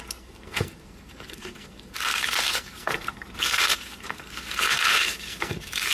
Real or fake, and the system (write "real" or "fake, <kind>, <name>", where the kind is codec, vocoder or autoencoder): fake, codec, SNAC